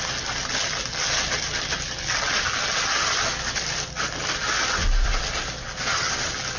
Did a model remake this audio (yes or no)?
no